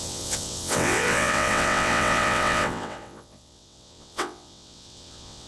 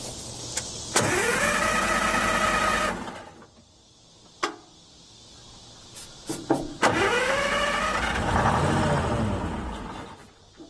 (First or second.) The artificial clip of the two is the first